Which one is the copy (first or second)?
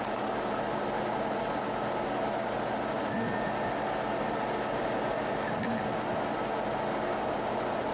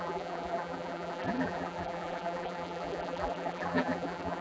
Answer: second